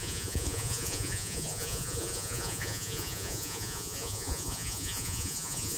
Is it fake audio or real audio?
fake